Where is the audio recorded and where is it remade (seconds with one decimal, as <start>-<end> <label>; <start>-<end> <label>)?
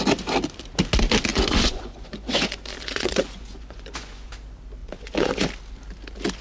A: 0.0-1.3 recorded; 1.3-4.3 remade; 4.3-4.8 recorded; 4.8-5.5 remade; 5.5-6.4 recorded